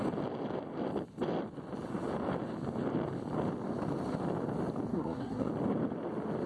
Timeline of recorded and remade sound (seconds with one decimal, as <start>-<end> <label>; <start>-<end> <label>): 0.0-4.9 recorded; 4.9-5.5 remade; 5.5-6.5 recorded